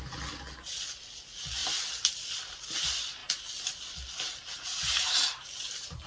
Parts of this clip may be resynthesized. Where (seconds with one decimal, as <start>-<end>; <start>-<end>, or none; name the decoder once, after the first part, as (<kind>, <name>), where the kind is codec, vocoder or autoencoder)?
none